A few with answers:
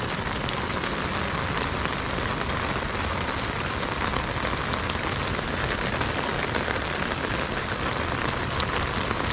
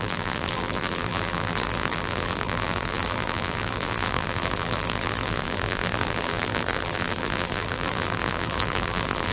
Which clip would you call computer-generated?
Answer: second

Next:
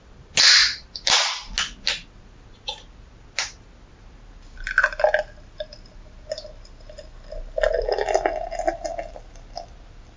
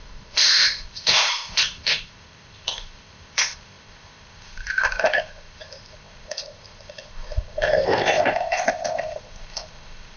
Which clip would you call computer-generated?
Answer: second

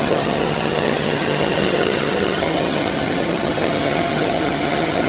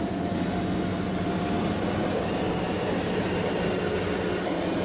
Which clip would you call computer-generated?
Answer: first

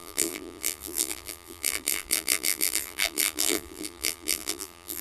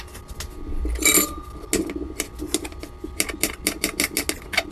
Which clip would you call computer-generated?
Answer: first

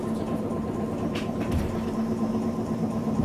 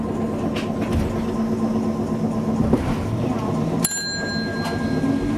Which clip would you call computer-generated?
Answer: first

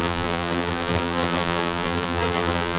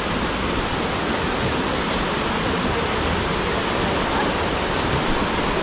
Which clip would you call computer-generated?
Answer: first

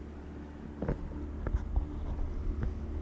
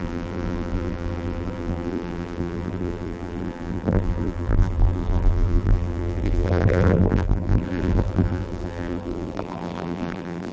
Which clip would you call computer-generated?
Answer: second